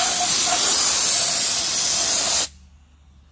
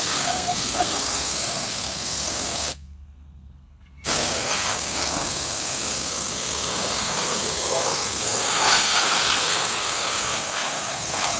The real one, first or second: first